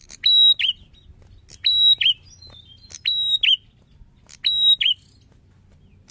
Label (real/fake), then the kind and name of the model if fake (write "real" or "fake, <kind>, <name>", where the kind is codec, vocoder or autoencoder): real